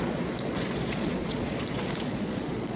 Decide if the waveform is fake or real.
fake